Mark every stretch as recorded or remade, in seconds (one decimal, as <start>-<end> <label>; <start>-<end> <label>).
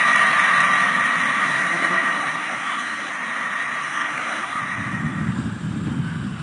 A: 0.0-1.4 recorded; 1.4-3.1 remade; 3.1-3.8 recorded; 3.8-4.6 remade; 4.6-6.4 recorded